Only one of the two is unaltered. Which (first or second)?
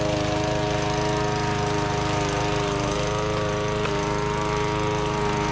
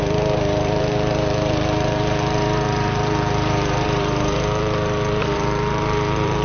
first